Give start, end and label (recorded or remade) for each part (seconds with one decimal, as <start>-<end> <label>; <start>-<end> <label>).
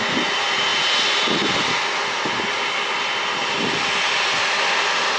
0.0-5.2 recorded